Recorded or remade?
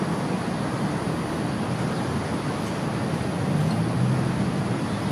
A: recorded